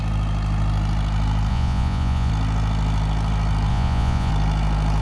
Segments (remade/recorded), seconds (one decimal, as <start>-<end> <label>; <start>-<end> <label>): 0.0-1.5 recorded; 1.5-2.3 remade; 2.3-3.7 recorded; 3.7-4.3 remade; 4.3-5.0 recorded